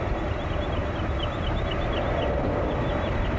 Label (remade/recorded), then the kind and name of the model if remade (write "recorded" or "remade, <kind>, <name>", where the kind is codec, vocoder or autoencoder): recorded